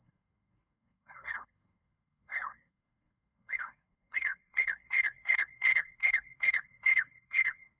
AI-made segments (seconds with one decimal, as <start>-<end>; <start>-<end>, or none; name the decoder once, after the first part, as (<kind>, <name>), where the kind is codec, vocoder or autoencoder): 0.0-7.8 (codec, SNAC)